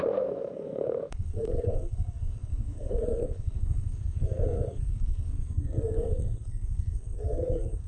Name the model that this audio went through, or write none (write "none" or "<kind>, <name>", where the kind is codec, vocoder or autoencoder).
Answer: codec, SNAC